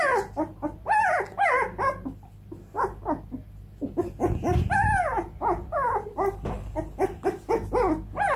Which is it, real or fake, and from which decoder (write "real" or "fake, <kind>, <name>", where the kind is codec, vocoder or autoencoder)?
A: real